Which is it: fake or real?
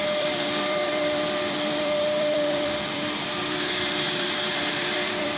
fake